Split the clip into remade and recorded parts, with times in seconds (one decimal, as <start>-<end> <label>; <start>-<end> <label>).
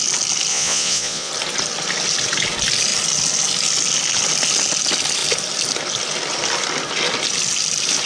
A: 0.0-0.5 recorded; 0.5-1.3 remade; 1.3-8.1 recorded